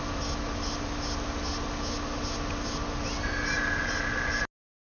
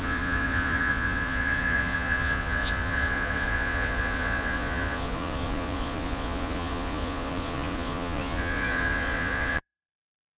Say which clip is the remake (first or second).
second